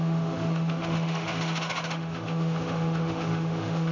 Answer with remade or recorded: remade